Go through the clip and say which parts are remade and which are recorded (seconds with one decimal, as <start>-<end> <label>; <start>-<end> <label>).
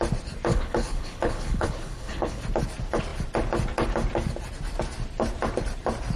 0.0-0.5 recorded; 0.5-2.4 remade; 2.4-6.2 recorded